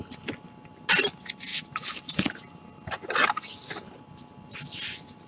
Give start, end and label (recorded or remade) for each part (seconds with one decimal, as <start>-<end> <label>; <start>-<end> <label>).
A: 0.0-5.3 recorded